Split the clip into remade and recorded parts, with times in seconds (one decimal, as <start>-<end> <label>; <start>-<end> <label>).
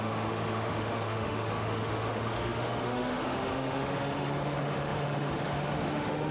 0.0-6.3 remade